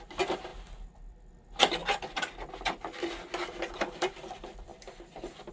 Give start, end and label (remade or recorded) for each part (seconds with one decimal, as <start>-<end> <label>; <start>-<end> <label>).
0.0-5.5 recorded